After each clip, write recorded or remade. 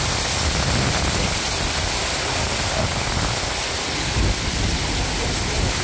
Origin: recorded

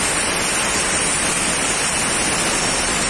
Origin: recorded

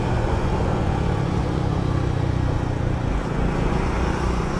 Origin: remade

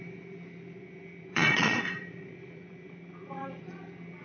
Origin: remade